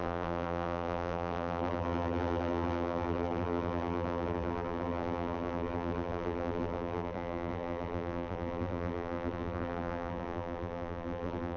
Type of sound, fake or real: fake